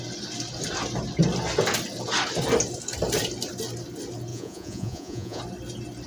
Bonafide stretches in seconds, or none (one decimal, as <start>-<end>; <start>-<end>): 0.0-4.3; 5.4-6.1